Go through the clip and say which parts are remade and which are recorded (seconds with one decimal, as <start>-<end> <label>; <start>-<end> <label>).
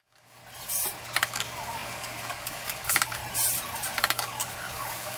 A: 0.0-0.4 remade; 0.4-1.0 recorded; 1.0-3.2 remade; 3.2-4.0 recorded; 4.0-5.2 remade